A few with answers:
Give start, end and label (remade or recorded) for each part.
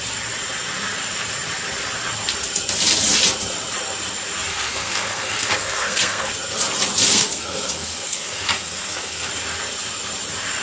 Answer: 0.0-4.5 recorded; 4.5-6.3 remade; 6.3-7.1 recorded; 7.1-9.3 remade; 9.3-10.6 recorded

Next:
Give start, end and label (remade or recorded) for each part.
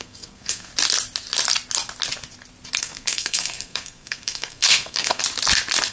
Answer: 0.0-0.7 remade; 0.7-2.8 recorded; 2.8-5.2 remade; 5.2-5.9 recorded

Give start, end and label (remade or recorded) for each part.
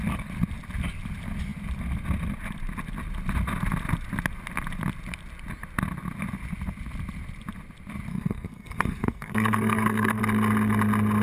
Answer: 0.0-8.1 recorded; 8.1-10.2 remade; 10.2-11.2 recorded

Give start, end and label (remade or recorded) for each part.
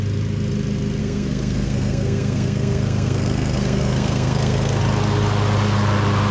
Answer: 0.0-1.0 recorded; 1.0-4.8 remade; 4.8-6.3 recorded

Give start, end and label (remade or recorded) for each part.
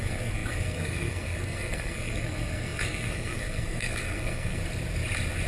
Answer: 0.0-4.6 remade; 4.6-5.5 recorded